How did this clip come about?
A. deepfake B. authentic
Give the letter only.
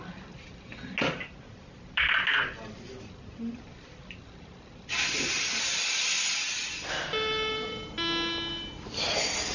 B